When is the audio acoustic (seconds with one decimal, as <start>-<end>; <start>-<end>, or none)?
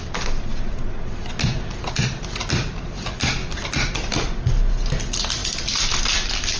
0.0-6.6